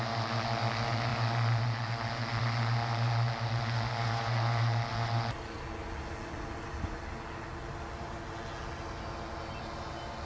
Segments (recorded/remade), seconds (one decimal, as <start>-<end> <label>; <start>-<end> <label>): 0.0-10.2 recorded

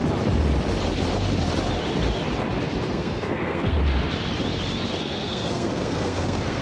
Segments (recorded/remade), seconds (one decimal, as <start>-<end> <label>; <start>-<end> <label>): 0.0-2.9 recorded; 2.9-3.8 remade; 3.8-5.0 recorded; 5.0-6.6 remade

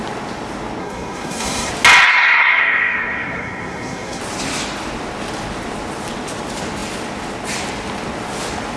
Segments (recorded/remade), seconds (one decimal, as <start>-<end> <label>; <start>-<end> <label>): 0.0-0.8 recorded; 0.8-1.7 remade; 1.7-2.1 recorded; 2.1-4.2 remade; 4.2-8.8 recorded

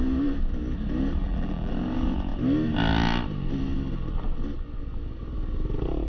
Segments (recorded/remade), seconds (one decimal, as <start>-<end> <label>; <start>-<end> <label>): 0.0-1.2 recorded; 1.2-1.7 remade; 1.7-6.1 recorded

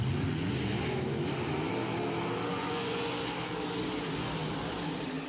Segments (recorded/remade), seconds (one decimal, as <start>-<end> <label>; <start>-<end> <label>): 0.0-2.5 recorded; 2.5-3.1 remade; 3.1-5.3 recorded

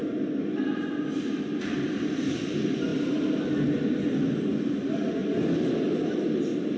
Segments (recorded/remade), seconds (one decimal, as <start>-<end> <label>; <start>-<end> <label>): 0.0-6.8 recorded

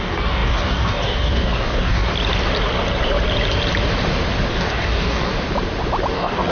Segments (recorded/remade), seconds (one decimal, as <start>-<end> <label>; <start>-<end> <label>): 0.0-2.1 remade; 2.1-4.5 recorded; 4.5-5.3 remade; 5.3-6.1 recorded; 6.1-6.5 remade